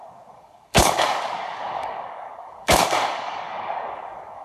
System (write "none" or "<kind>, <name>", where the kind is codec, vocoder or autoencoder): codec, DAC